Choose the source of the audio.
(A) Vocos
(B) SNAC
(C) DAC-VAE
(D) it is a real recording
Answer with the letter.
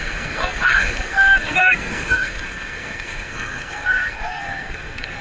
B